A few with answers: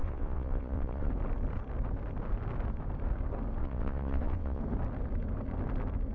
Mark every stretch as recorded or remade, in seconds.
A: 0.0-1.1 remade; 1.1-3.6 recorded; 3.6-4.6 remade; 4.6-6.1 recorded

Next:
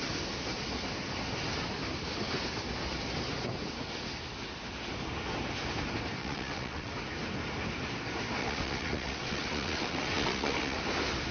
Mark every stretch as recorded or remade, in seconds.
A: 0.0-6.2 recorded; 6.2-6.9 remade; 6.9-8.4 recorded; 8.4-10.8 remade; 10.8-11.3 recorded

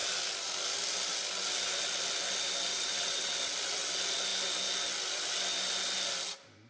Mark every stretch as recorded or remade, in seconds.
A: 0.0-2.7 recorded; 2.7-3.3 remade; 3.3-6.7 recorded

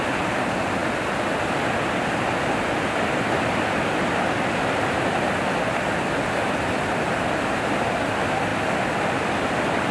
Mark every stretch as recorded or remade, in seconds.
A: 0.0-9.9 recorded